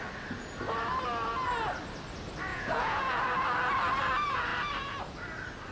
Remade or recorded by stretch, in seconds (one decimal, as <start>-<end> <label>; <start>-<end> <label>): 0.0-2.5 recorded; 2.5-3.2 remade; 3.2-5.7 recorded